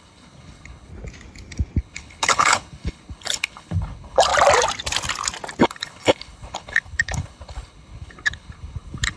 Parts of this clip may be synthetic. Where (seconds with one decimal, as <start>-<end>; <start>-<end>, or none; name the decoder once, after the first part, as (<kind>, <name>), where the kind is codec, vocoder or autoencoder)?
0.0-0.9 (codec, HILCodec); 1.8-4.3; 5.6-9.2